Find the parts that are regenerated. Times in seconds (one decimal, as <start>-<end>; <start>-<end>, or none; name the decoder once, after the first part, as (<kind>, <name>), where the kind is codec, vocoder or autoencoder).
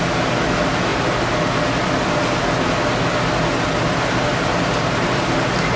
none